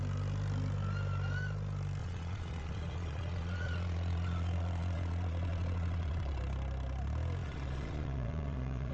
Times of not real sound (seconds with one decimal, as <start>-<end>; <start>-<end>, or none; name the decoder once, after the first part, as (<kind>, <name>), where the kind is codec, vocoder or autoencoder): 2.0-6.4 (vocoder, Vocos); 7.4-8.9

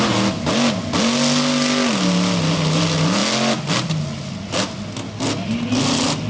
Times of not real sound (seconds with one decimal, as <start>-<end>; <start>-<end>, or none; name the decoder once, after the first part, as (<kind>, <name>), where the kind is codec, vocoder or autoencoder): none

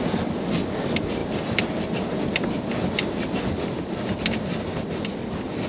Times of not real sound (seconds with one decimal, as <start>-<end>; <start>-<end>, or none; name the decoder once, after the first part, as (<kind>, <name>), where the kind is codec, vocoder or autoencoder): none